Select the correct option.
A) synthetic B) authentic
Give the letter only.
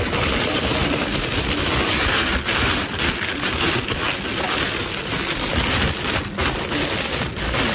B